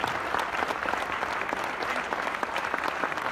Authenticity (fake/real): real